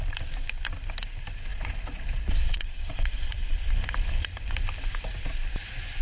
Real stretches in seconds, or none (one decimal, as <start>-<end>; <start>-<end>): 0.0-1.5; 3.7-6.0